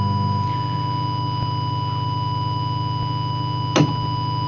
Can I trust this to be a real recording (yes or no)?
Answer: yes